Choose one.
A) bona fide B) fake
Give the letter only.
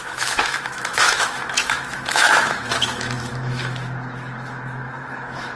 B